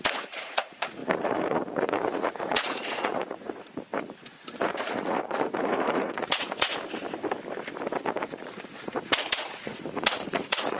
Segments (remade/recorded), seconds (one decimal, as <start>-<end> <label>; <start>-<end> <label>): 0.0-6.7 remade; 6.7-8.0 recorded; 8.0-10.8 remade